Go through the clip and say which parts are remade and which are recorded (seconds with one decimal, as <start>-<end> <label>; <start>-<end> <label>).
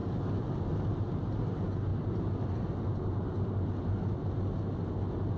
0.0-5.4 recorded